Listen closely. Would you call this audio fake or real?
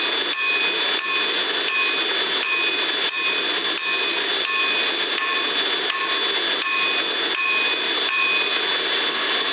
real